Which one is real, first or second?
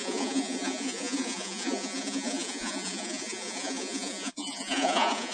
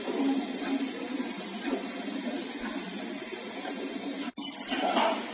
second